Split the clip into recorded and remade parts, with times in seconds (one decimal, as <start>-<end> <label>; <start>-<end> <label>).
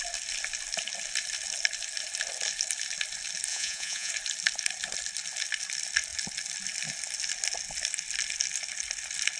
0.0-3.5 recorded; 3.5-4.1 remade; 4.1-9.4 recorded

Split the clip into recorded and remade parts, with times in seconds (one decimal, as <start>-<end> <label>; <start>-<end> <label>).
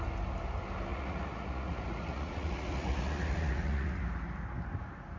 0.0-0.9 recorded; 0.9-4.0 remade; 4.0-5.2 recorded